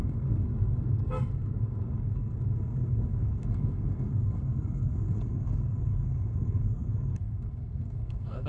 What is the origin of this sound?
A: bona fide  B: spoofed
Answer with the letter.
B